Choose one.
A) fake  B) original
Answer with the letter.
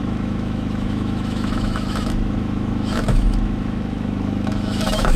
A